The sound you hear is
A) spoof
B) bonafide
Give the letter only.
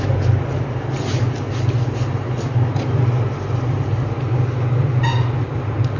B